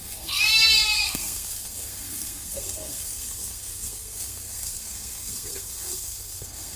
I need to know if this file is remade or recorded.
remade